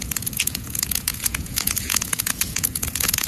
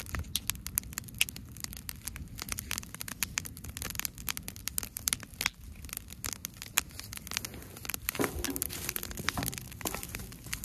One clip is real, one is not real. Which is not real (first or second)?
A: first